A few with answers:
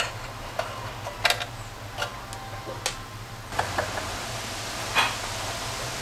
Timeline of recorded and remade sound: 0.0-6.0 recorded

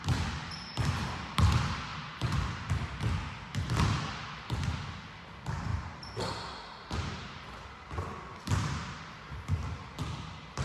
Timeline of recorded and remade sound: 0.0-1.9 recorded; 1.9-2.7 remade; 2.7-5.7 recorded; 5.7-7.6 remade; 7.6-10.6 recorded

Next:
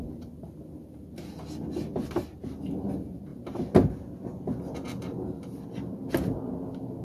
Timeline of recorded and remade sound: 0.0-7.0 recorded

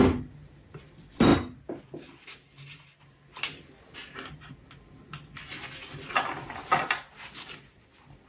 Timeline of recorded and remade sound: 0.0-8.3 recorded

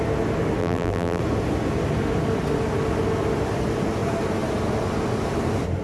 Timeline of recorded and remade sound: 0.0-0.6 recorded; 0.6-1.2 remade; 1.2-5.8 recorded

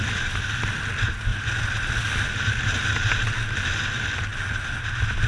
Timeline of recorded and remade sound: 0.0-5.3 recorded

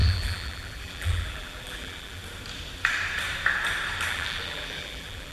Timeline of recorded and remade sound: 0.0-2.2 remade; 2.2-4.1 recorded; 4.1-5.3 remade